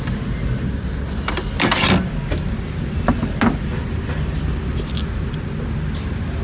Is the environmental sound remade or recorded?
recorded